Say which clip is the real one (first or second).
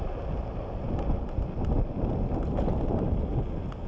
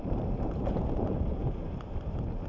first